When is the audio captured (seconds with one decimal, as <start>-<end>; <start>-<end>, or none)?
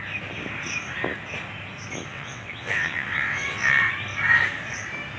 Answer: 0.0-2.1; 3.9-5.2